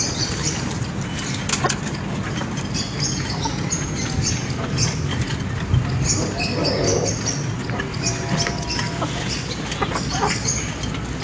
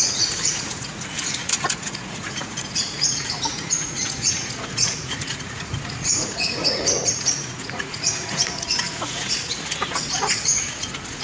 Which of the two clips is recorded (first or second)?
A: first